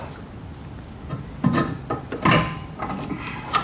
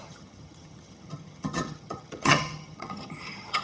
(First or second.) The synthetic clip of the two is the second